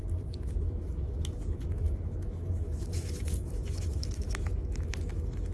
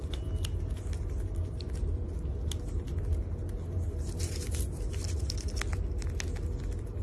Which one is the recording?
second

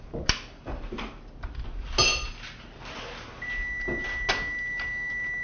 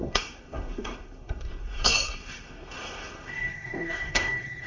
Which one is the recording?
first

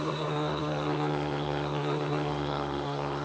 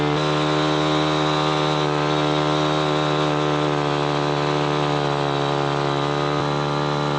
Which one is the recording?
second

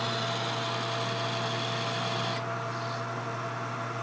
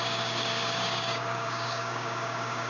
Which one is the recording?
first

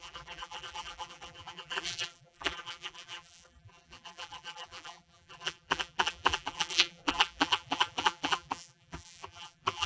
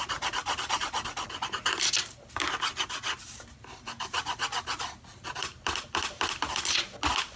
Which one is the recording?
second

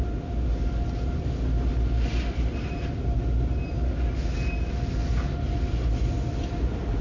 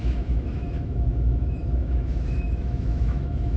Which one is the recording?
first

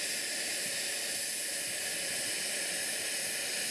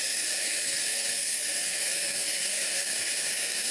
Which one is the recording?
first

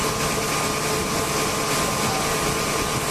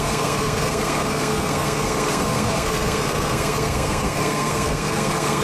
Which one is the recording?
first